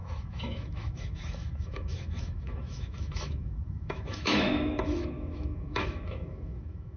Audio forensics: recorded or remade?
remade